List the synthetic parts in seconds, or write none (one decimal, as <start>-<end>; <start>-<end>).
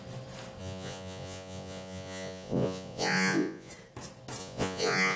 0.6-3.7; 4.4-5.2